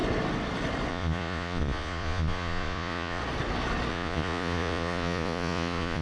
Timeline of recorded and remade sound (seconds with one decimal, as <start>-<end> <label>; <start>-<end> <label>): 0.0-0.9 recorded; 0.9-3.2 remade; 3.2-3.9 recorded; 3.9-6.0 remade